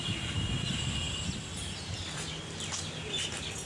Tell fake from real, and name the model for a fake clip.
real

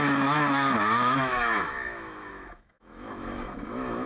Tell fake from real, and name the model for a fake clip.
fake, autoencoder, DAC-VAE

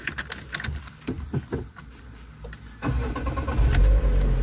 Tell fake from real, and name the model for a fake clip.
real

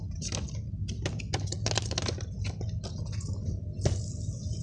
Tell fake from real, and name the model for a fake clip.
real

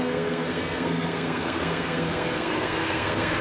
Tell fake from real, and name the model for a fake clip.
fake, codec, SNAC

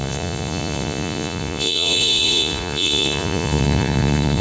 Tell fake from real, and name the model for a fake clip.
fake, vocoder, Vocos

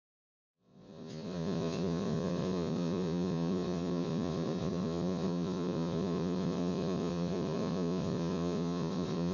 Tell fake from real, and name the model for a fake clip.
fake, vocoder, Vocos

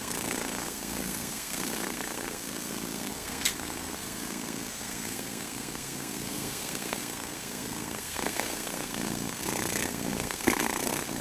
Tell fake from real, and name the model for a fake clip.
fake, codec, SNAC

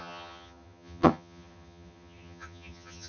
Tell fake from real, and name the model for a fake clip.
fake, vocoder, HiFi-GAN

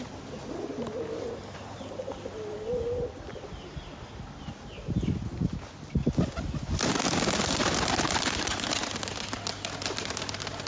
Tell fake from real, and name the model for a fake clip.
real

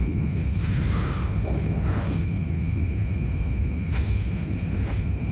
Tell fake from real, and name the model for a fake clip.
fake, autoencoder, DAC-VAE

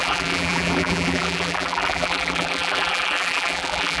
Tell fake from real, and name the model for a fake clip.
fake, vocoder, BigVGAN v2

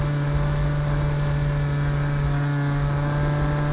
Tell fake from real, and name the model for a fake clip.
real